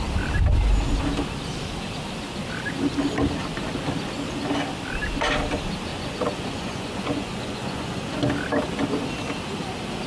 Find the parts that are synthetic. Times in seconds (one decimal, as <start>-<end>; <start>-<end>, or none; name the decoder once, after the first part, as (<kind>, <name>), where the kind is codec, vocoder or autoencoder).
5.9-8.2 (vocoder, Vocos)